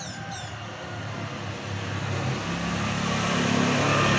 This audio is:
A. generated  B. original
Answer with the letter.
B